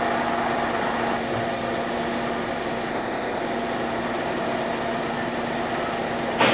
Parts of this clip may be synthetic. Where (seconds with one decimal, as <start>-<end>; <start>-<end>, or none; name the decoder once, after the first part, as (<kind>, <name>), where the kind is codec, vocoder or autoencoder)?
2.9-3.4 (codec, ZipCodec)